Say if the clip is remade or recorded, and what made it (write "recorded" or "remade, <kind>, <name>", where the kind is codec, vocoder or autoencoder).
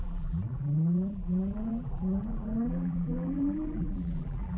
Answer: remade, vocoder, BigVGAN v2